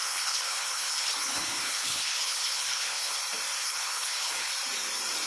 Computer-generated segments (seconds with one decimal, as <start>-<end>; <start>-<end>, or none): 0.0-3.2; 3.6-4.5